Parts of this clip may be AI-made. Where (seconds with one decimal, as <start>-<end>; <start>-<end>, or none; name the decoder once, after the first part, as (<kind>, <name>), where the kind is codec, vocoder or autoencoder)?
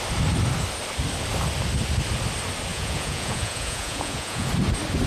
2.7-4.5 (vocoder, Vocos)